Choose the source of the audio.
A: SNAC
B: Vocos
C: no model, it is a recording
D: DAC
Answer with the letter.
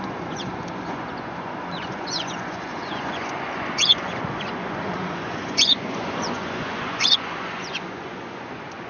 B